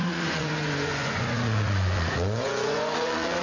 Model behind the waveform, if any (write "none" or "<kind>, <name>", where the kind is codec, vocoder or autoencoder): vocoder, Vocos